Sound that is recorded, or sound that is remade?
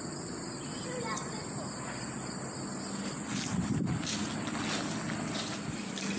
recorded